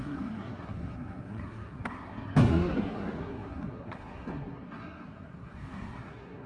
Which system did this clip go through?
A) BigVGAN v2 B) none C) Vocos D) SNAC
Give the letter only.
D